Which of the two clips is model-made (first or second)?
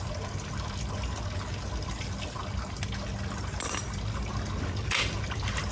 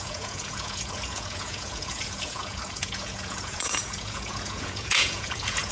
second